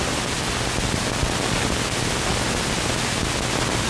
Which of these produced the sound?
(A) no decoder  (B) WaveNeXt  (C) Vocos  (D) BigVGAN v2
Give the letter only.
A